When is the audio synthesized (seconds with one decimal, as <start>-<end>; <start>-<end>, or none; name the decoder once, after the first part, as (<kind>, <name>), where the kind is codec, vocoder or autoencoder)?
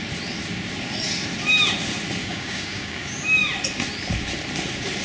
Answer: 2.2-3.2 (codec, DAC)